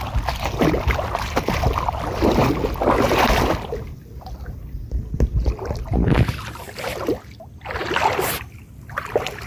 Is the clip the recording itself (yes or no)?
yes